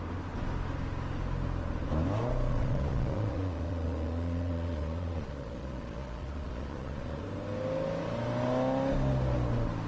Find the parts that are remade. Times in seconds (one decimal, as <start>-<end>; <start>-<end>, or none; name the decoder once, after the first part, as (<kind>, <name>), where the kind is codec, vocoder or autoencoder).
2.5-7.2 (vocoder, Vocos)